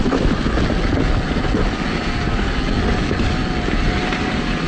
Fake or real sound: real